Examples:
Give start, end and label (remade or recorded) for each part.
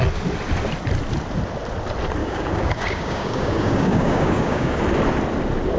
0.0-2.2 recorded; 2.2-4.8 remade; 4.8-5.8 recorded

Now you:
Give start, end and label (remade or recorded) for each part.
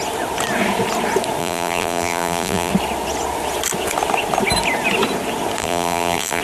0.0-1.4 recorded; 1.4-2.7 remade; 2.7-5.6 recorded; 5.6-6.4 remade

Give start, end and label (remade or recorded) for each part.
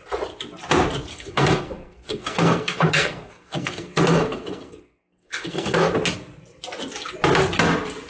0.0-1.1 recorded; 1.1-5.9 remade; 5.9-8.1 recorded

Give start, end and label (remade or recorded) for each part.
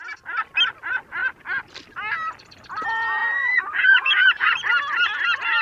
0.0-3.2 recorded; 3.2-4.5 remade; 4.5-5.6 recorded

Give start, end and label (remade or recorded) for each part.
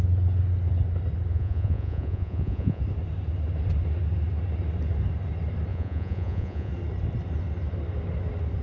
0.0-1.3 recorded; 1.3-2.8 remade; 2.8-5.7 recorded; 5.7-6.7 remade; 6.7-8.6 recorded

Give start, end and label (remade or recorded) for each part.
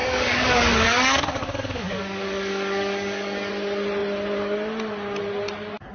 0.0-3.5 remade; 3.5-5.9 recorded